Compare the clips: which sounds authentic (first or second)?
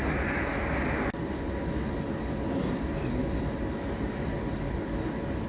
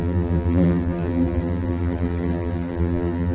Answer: first